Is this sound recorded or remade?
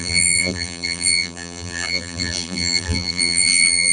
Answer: remade